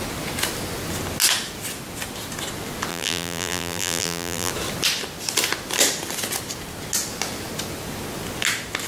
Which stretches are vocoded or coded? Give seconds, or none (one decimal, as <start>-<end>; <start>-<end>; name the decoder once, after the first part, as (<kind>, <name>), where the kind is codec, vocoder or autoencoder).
2.9-4.5 (vocoder, BigVGAN v2)